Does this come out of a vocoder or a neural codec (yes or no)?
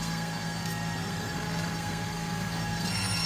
yes